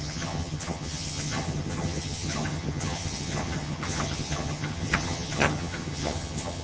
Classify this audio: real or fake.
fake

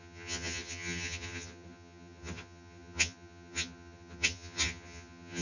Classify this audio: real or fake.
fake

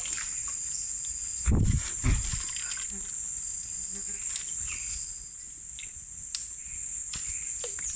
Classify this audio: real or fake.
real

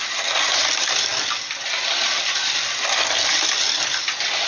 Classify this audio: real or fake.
real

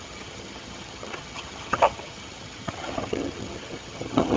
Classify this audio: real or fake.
fake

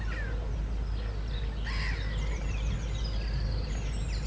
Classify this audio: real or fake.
real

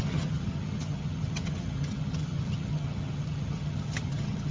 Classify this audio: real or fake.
fake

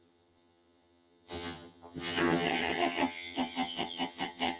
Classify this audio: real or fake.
fake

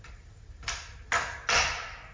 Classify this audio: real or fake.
real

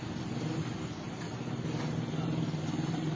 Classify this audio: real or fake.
real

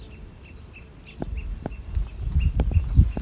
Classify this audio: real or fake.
real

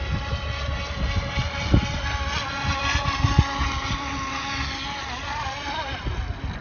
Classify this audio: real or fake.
real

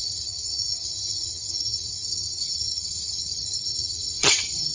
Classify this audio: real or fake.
fake